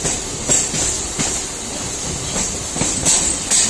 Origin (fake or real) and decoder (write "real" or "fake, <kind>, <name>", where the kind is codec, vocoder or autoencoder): real